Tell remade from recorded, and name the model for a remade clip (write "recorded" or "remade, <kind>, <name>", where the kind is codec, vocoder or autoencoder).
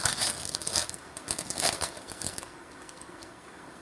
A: remade, codec, SNAC